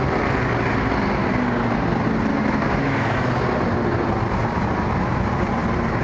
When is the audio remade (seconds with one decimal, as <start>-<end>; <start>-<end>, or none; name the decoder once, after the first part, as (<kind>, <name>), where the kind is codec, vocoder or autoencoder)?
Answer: 2.3-3.3 (autoencoder, DAC-VAE)